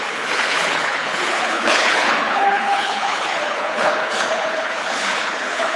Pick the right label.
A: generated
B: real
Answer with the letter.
A